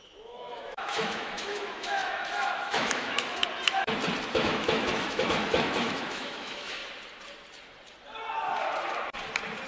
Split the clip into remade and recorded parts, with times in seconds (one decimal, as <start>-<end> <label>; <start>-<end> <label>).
0.0-3.4 remade; 3.4-4.3 recorded; 4.3-6.8 remade; 6.8-9.7 recorded